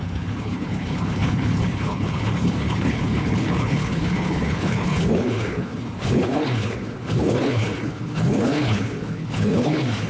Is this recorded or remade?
remade